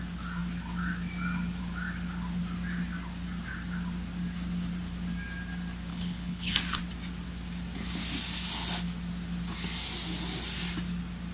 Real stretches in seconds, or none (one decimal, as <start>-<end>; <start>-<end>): 0.0-5.9; 6.5-11.3